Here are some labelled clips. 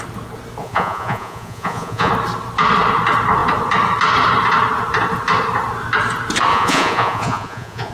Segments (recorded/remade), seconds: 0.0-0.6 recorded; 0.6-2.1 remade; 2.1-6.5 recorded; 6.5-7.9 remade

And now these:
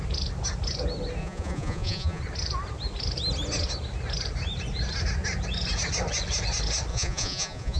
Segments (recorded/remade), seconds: 0.0-1.2 recorded; 1.2-2.2 remade; 2.2-6.9 recorded; 6.9-7.8 remade

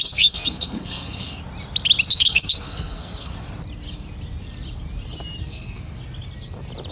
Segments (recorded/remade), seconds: 0.0-1.4 remade; 1.4-2.1 recorded; 2.1-3.3 remade; 3.3-5.4 recorded; 5.4-5.9 remade; 5.9-6.9 recorded

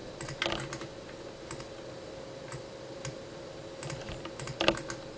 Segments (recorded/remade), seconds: 0.0-5.2 recorded

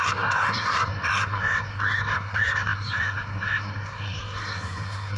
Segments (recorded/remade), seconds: 0.0-5.2 remade

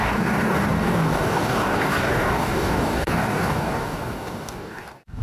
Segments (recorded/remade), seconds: 0.0-5.2 remade

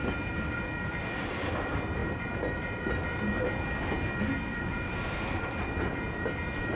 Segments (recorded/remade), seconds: 0.0-6.8 recorded

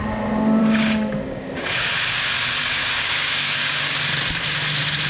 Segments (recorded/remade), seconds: 0.0-0.6 recorded; 0.6-1.9 remade; 1.9-2.8 recorded; 2.8-4.0 remade; 4.0-5.1 recorded